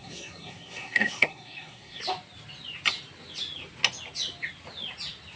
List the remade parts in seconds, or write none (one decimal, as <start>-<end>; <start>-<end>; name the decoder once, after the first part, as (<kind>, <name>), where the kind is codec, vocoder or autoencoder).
0.0-2.0 (codec, SNAC)